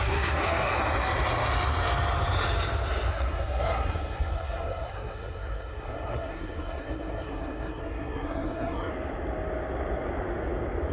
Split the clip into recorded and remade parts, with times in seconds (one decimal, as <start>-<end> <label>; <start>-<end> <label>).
0.0-0.7 remade; 0.7-3.1 recorded; 3.1-8.9 remade; 8.9-10.9 recorded